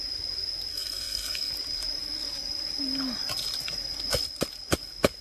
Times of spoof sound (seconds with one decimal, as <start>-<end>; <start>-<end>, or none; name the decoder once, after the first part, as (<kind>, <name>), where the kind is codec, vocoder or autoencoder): 0.7-1.5 (codec, SNAC)